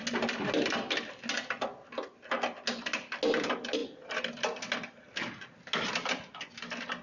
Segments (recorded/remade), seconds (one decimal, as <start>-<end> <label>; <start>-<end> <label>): 0.0-7.0 recorded